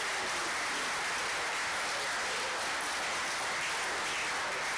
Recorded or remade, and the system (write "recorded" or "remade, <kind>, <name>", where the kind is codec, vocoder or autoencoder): recorded